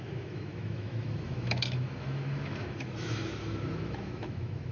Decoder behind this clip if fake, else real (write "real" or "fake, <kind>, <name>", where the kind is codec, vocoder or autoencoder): fake, autoencoder, DAC-VAE